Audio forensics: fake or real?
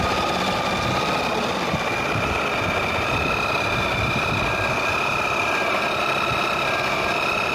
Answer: real